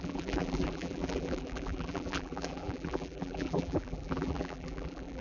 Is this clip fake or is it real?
fake